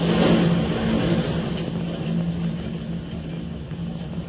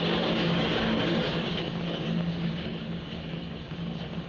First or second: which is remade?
second